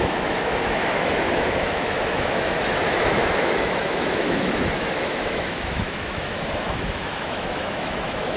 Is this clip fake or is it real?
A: fake